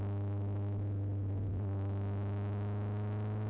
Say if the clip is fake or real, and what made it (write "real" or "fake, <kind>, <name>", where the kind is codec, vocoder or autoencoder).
real